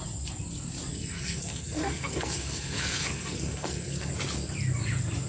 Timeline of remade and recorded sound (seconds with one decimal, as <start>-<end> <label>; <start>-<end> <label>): 0.0-0.9 recorded; 0.9-4.1 remade; 4.1-5.3 recorded